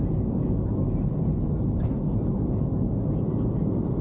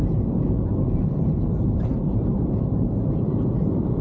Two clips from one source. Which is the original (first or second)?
first